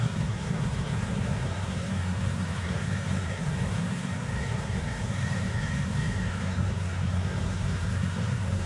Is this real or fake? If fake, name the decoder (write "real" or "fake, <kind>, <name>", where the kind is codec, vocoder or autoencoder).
fake, codec, SNAC